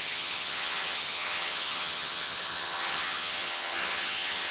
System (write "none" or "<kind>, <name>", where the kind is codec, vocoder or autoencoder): vocoder, HiFi-GAN